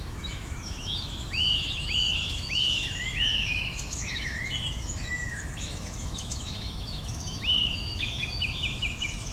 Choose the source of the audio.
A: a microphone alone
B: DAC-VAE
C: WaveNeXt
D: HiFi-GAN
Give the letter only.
B